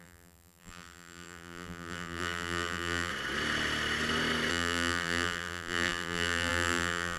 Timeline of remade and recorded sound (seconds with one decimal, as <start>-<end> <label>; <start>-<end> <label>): 0.0-3.1 remade; 3.1-4.5 recorded; 4.5-7.2 remade